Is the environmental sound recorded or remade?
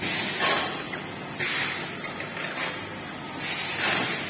recorded